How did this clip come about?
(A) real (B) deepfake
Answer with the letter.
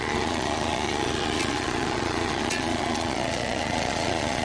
B